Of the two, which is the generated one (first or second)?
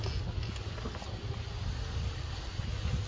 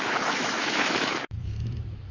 second